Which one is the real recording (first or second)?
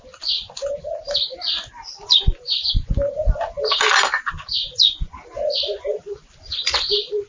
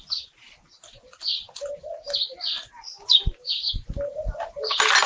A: second